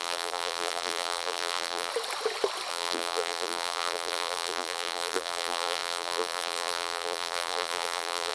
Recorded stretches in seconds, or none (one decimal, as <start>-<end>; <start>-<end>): 1.9-2.7